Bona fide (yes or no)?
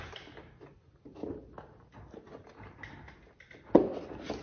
yes